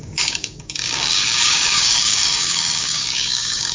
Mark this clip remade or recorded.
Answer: remade